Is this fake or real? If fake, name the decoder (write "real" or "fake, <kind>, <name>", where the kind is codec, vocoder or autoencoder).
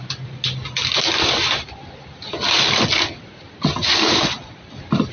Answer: real